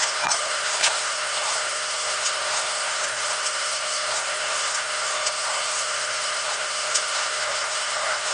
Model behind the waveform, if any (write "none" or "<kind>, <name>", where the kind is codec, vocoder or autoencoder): codec, SNAC